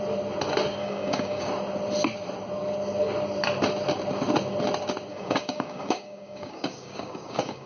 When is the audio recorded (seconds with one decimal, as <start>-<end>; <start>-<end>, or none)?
0.0-0.8; 1.5-5.1